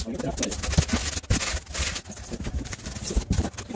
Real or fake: real